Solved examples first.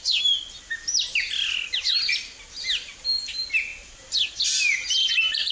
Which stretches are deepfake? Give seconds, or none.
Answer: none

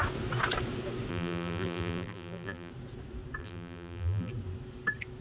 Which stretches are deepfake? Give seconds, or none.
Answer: 1.1-2.7; 3.4-4.3

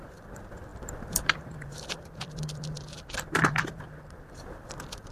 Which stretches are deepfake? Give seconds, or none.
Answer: 0.0-5.1

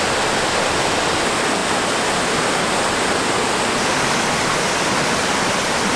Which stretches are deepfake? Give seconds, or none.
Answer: none

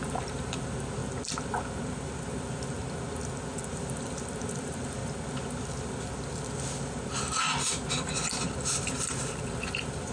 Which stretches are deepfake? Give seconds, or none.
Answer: 0.0-1.0; 2.4-2.8; 4.4-5.0; 8.9-10.1

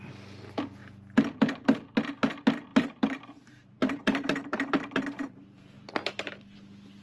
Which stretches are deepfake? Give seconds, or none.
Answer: 2.7-5.9

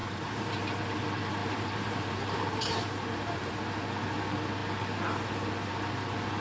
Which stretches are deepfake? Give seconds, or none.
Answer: 0.0-0.5; 1.4-3.5